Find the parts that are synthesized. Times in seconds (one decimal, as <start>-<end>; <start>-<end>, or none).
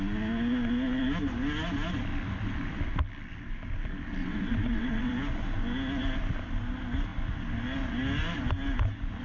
4.2-5.1